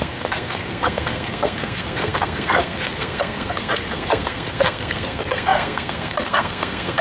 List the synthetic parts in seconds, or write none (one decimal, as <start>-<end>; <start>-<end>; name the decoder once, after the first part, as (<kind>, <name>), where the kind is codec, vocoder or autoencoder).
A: 0.0-7.0 (codec, SNAC)